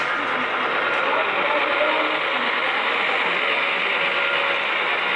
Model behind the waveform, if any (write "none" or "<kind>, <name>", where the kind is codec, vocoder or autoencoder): none